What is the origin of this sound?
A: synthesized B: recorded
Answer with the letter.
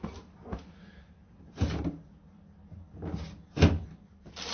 B